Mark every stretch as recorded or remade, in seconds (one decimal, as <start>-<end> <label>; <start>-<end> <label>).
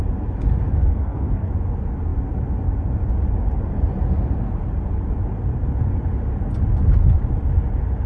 0.0-0.6 recorded; 0.6-1.5 remade; 1.5-8.1 recorded